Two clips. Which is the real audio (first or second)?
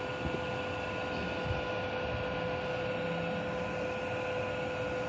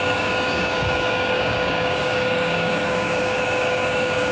first